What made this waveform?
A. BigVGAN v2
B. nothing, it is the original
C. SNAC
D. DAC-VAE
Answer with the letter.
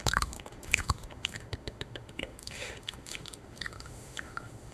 D